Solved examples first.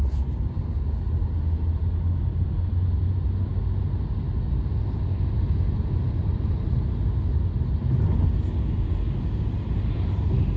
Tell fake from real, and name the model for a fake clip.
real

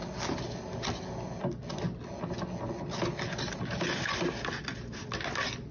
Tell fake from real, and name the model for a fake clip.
real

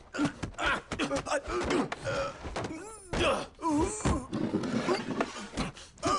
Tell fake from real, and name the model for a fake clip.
real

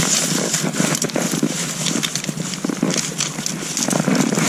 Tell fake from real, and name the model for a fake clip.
real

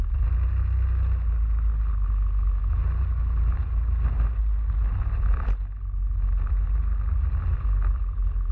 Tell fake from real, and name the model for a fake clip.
real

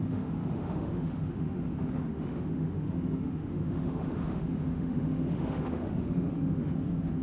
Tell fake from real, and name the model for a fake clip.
fake, autoencoder, DAC-VAE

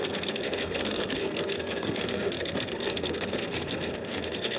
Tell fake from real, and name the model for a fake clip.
fake, codec, SNAC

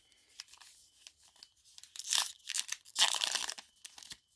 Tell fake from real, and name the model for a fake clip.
real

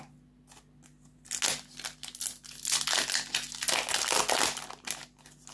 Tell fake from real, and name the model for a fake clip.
real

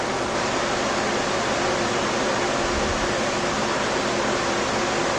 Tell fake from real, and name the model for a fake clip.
real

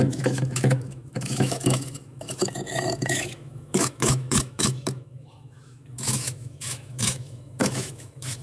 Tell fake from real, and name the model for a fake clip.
fake, autoencoder, DAC-VAE